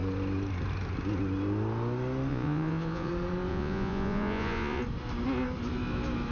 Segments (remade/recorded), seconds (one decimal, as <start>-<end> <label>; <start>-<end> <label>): 0.0-2.3 recorded; 2.3-3.1 remade; 3.1-3.5 recorded; 3.5-4.8 remade; 4.8-6.3 recorded